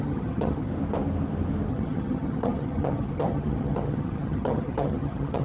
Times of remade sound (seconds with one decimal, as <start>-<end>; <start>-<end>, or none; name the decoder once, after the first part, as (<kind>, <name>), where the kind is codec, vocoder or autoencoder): 0.0-0.7 (vocoder, HiFi-GAN); 1.7-5.4